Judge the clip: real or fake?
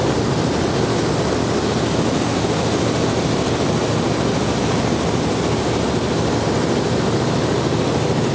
real